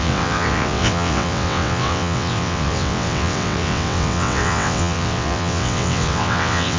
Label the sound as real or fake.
fake